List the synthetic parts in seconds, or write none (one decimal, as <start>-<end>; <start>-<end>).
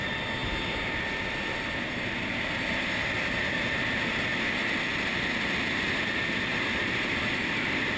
none